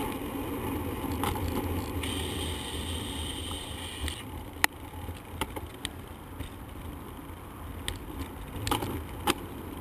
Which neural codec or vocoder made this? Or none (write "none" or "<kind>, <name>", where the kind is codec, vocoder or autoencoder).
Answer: none